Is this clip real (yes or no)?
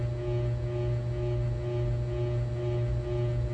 yes